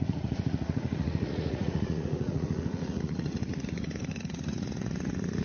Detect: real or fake fake